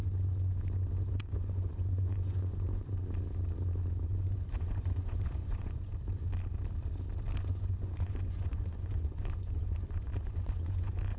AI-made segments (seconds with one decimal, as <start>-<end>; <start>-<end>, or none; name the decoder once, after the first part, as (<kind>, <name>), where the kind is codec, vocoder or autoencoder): 1.1-2.9 (vocoder, Vocos); 4.1-5.9; 7.4-11.2